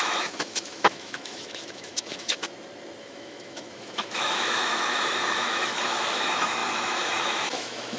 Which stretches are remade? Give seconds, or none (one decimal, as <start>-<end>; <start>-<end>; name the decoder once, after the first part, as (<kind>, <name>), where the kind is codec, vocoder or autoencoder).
0.0-2.4 (autoencoder, DAC-VAE); 3.0-8.0